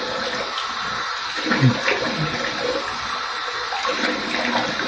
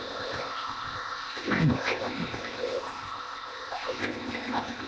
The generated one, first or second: second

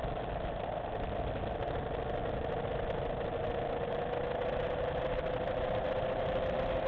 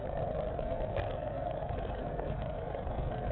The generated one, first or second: second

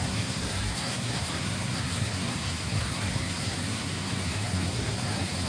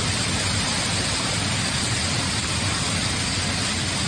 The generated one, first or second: first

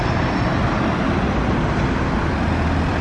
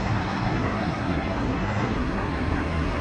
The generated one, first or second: second